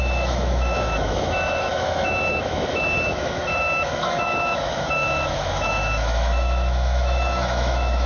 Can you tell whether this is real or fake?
fake